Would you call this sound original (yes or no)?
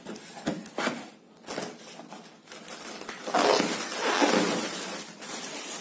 yes